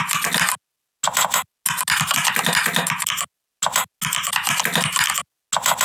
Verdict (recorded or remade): recorded